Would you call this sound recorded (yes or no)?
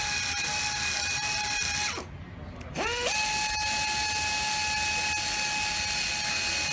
yes